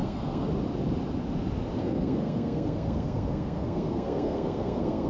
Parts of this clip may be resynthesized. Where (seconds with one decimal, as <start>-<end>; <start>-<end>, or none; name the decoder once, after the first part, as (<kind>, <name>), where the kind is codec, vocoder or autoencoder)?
0.0-0.5 (codec, SNAC); 1.8-5.1